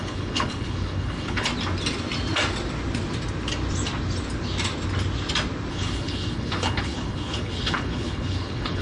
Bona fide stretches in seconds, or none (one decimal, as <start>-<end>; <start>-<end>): 1.5-5.7